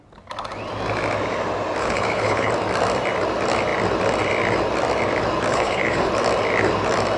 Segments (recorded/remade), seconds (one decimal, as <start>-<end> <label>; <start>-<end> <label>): 0.0-1.8 recorded; 1.8-2.5 remade; 2.5-5.5 recorded; 5.5-6.1 remade; 6.1-7.2 recorded